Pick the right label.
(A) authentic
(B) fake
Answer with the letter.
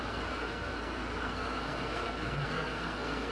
B